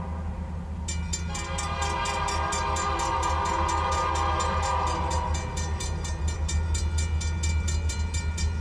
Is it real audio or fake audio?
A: real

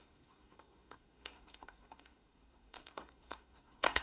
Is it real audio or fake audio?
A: fake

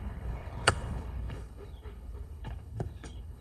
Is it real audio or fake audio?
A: fake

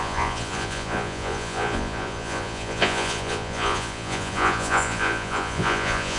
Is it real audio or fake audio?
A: fake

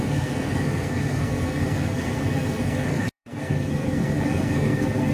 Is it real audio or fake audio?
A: fake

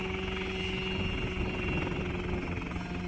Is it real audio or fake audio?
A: real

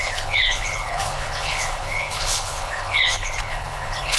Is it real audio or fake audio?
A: fake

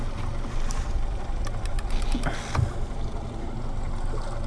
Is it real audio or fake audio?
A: real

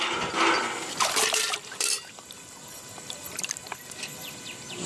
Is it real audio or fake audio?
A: real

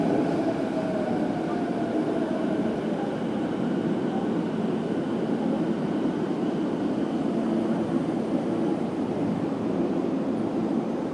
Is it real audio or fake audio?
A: real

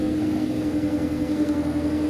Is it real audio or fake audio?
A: fake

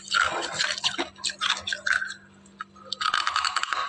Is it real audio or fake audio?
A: real